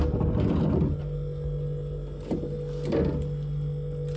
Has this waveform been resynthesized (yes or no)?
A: no